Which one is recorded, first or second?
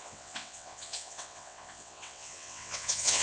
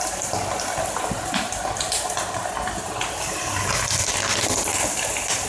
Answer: second